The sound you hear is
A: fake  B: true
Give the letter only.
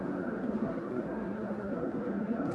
A